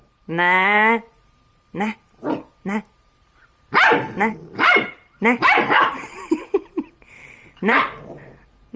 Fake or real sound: fake